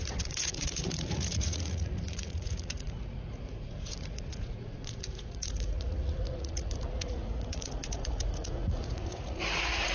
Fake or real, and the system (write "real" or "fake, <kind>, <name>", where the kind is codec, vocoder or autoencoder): fake, vocoder, Vocos